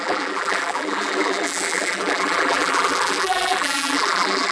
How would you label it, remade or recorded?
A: remade